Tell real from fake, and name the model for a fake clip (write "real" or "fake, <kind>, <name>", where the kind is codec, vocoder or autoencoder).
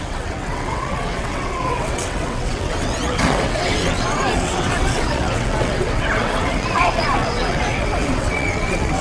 fake, vocoder, WaveNeXt